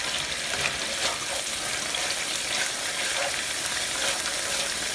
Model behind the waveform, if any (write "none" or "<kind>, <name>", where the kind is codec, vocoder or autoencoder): none